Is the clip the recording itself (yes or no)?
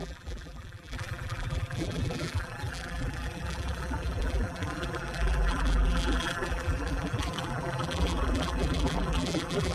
no